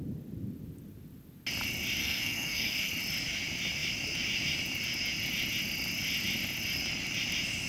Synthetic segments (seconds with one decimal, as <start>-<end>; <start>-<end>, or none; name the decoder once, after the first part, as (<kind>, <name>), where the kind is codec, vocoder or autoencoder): 2.0-2.9 (codec, SNAC)